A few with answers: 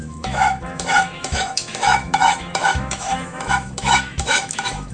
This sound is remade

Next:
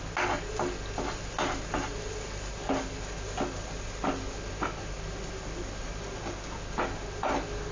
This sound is recorded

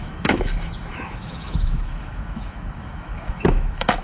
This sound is remade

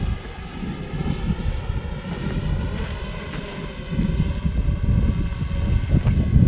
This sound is recorded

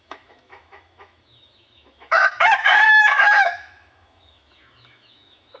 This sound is remade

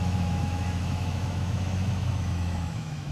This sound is remade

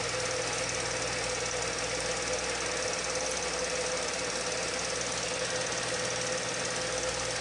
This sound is recorded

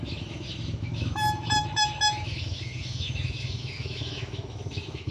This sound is remade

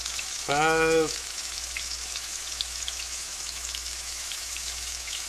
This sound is remade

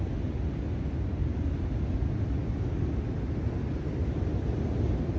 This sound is recorded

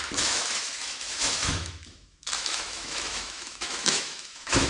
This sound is remade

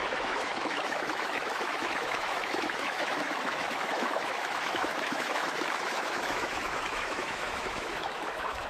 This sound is remade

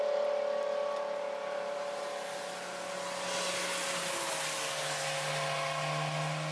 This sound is recorded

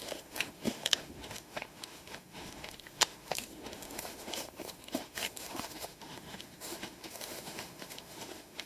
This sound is remade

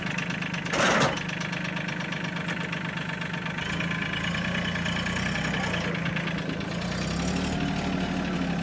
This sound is recorded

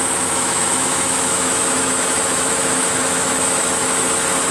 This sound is remade